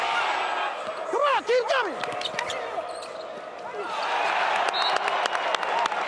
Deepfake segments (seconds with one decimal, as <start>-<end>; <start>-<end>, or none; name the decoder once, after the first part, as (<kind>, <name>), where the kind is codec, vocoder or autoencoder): none